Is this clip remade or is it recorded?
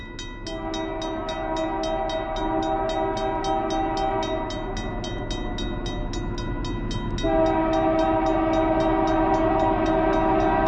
recorded